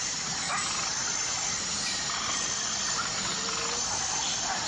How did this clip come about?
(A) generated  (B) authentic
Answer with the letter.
A